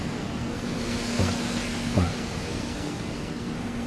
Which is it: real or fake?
fake